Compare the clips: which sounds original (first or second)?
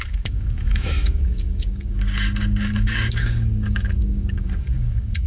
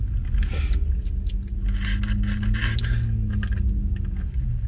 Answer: second